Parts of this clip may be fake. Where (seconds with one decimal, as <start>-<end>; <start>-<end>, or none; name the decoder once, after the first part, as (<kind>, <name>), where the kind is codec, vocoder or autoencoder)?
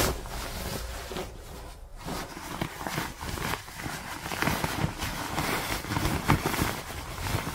none